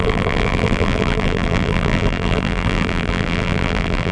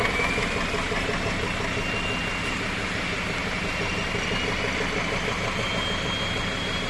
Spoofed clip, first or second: first